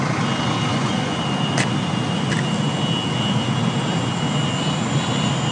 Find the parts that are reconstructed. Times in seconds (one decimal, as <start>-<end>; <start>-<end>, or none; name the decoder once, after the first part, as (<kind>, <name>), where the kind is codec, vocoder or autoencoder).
0.7-1.2 (vocoder, Vocos)